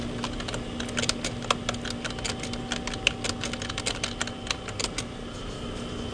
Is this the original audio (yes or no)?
yes